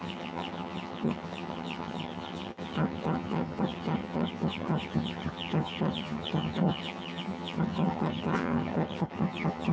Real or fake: fake